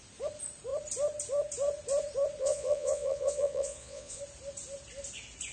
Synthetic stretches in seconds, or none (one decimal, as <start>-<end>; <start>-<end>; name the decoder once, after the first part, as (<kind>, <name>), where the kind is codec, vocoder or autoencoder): 2.4-4.2 (vocoder, Vocos)